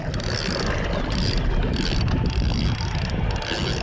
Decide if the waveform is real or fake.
real